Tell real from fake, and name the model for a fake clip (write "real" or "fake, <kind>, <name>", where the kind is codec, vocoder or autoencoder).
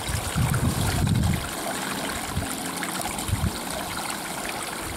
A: real